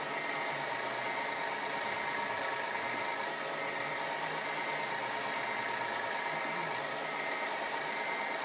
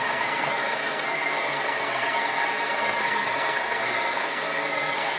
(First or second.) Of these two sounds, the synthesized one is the second